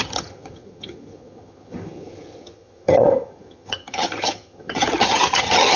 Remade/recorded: remade